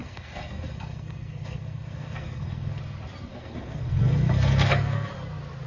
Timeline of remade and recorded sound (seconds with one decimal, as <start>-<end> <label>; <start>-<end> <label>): 0.0-2.8 remade; 2.8-3.3 recorded; 3.3-5.1 remade; 5.1-5.7 recorded